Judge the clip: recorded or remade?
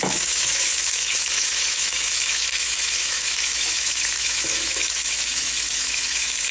remade